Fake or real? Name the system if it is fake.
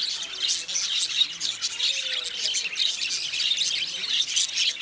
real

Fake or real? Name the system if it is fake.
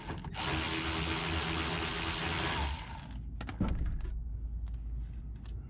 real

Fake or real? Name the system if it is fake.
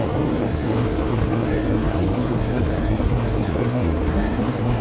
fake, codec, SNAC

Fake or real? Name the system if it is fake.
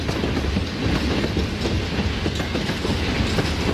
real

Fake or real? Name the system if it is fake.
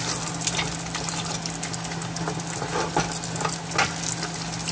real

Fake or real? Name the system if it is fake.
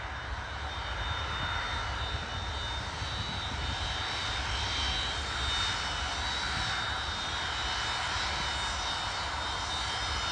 real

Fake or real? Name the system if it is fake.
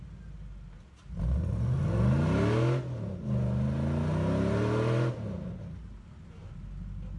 real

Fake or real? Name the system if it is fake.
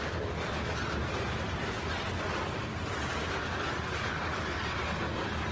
real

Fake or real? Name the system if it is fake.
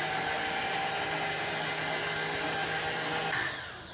real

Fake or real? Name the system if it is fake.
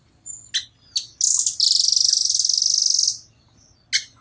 real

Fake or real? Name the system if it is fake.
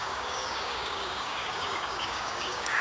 fake, codec, DAC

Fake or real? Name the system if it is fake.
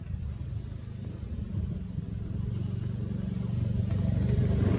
real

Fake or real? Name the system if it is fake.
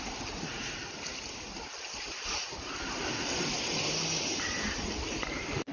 real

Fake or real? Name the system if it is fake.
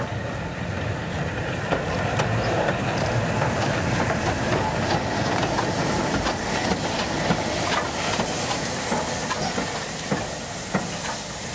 real